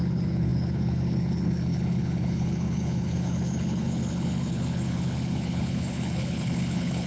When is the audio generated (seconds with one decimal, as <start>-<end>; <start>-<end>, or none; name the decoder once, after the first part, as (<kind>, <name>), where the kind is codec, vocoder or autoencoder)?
0.0-7.1 (codec, HILCodec)